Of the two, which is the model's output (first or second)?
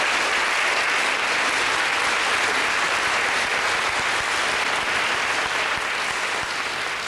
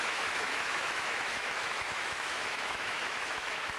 second